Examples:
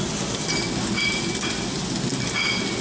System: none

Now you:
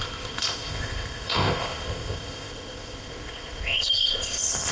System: codec, ZipCodec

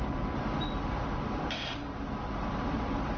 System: none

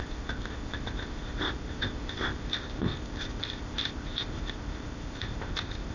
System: codec, ZipCodec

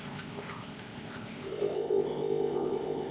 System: codec, ZipCodec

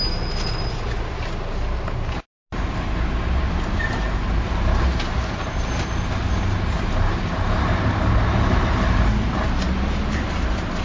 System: none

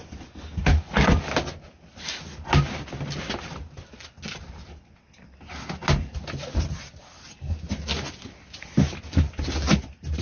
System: none